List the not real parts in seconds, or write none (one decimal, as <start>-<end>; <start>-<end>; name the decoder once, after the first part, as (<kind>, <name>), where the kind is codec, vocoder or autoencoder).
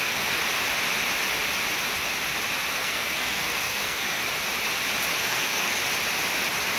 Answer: 0.0-0.4 (codec, SNAC); 2.7-4.2; 5.2-5.8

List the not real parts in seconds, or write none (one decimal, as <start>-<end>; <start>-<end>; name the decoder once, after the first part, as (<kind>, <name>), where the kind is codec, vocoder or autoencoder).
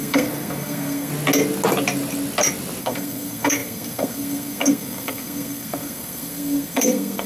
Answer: 0.0-1.1 (codec, SNAC); 2.8-7.3